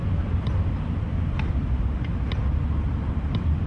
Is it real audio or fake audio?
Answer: real